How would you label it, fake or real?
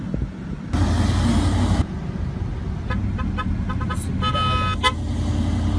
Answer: real